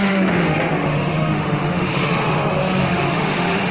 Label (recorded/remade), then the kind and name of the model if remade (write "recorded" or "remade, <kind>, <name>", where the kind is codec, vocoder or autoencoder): remade, autoencoder, DAC-VAE